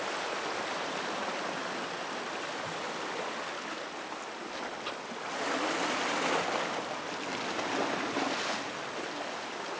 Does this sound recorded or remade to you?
recorded